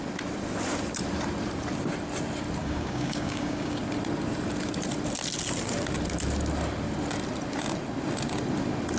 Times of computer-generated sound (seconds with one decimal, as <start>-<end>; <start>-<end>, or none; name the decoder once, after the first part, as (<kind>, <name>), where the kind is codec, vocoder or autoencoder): 2.6-3.8 (codec, DAC)